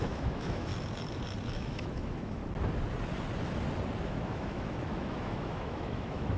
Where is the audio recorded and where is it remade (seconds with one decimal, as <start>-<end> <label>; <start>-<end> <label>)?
0.0-0.7 remade; 0.7-1.5 recorded; 1.5-2.4 remade; 2.4-4.0 recorded; 4.0-6.4 remade